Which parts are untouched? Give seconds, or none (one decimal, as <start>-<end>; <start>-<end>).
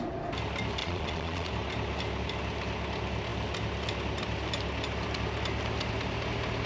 0.0-0.8; 1.5-6.7